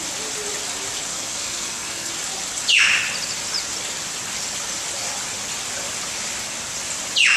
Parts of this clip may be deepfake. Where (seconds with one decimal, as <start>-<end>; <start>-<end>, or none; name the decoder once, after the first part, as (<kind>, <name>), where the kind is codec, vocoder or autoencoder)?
1.1-2.1 (codec, SNAC)